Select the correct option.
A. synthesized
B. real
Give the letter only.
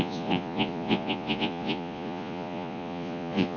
A